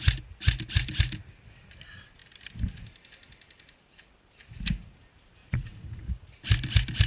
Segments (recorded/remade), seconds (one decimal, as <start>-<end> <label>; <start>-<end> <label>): 0.0-5.4 recorded; 5.4-6.0 remade; 6.0-7.1 recorded